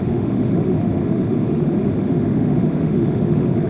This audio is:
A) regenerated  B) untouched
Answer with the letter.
A